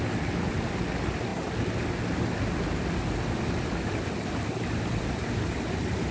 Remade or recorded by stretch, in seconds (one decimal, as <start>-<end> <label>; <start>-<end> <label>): 0.0-6.1 recorded